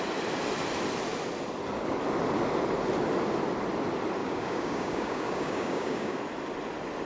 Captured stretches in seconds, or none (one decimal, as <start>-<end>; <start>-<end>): 0.0-4.2; 6.2-7.1

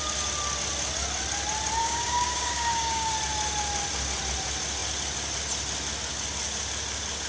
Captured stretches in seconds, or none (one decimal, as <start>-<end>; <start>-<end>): 0.0-1.8; 3.1-7.3

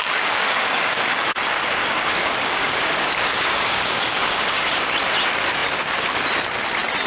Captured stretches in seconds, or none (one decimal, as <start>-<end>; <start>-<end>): 1.4-1.8; 4.9-7.1

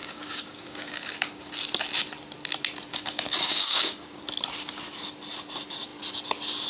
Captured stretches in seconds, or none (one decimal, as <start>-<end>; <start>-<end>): 1.5-2.9; 4.2-6.7

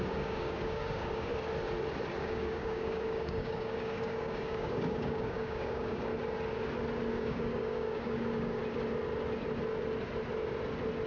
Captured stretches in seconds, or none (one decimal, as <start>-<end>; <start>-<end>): 1.3-2.2; 6.1-7.1; 8.6-11.1

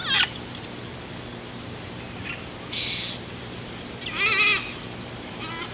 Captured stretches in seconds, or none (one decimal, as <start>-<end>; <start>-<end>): 0.0-5.7

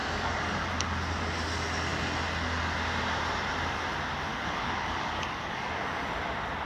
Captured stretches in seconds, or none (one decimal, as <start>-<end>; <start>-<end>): 0.7-4.3; 5.7-6.7

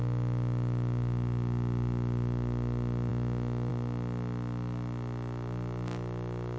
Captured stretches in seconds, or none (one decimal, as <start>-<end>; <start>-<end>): 0.0-6.6